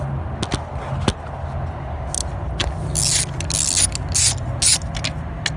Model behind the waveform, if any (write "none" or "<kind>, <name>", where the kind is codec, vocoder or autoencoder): none